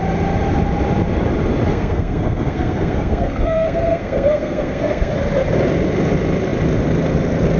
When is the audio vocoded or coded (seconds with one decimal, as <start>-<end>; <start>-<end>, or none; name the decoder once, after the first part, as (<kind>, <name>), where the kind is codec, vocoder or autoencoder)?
1.7-5.1 (codec, SNAC)